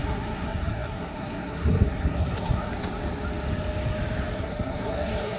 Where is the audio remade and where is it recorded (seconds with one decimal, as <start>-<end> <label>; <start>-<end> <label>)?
0.0-2.7 remade; 2.7-4.4 recorded; 4.4-5.4 remade

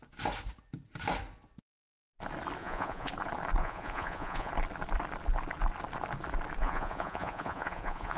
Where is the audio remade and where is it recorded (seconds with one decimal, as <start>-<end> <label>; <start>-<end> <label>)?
0.0-2.6 recorded; 2.6-3.1 remade; 3.1-3.6 recorded; 3.6-4.5 remade; 4.5-6.6 recorded; 6.6-8.2 remade

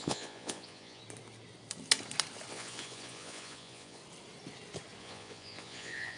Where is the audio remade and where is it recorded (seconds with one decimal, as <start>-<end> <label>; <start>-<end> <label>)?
0.0-1.0 remade; 1.0-2.5 recorded; 2.5-4.0 remade; 4.0-5.0 recorded; 5.0-6.2 remade

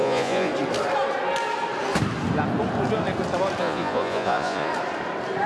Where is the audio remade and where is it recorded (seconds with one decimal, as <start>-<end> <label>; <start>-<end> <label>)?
0.0-0.5 remade; 0.5-3.6 recorded; 3.6-4.7 remade; 4.7-5.5 recorded

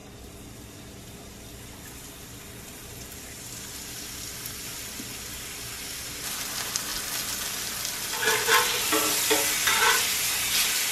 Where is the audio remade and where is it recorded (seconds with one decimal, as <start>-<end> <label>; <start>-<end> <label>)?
0.0-3.5 remade; 3.5-10.9 recorded